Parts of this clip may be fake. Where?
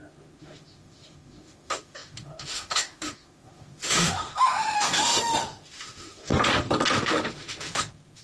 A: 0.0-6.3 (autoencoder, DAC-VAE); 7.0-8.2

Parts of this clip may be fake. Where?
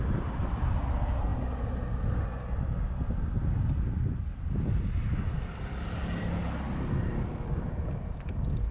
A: none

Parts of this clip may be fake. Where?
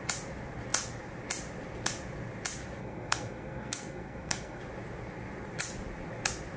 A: 2.8-4.6 (codec, SNAC)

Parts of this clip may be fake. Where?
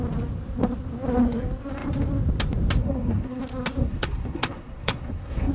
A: 2.8-3.4 (codec, SNAC); 3.8-5.5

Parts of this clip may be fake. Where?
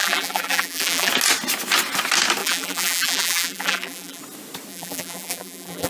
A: 0.0-1.1 (vocoder, BigVGAN v2); 2.4-4.2; 4.7-5.9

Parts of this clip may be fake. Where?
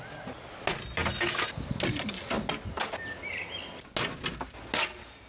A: none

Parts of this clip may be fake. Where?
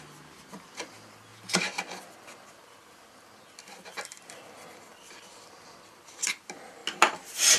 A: none